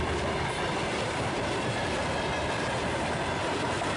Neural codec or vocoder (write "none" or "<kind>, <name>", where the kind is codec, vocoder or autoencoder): vocoder, BigVGAN v2